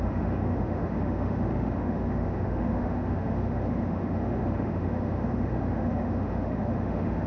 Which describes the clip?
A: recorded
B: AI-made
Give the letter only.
B